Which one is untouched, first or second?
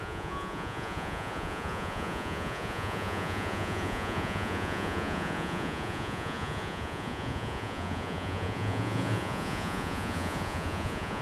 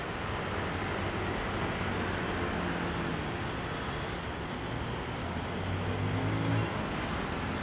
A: second